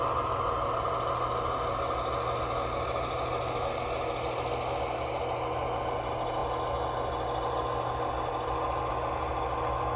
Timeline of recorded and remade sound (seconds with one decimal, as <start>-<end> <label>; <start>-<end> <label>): 0.0-10.0 recorded